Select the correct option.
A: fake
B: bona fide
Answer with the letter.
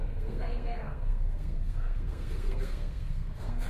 A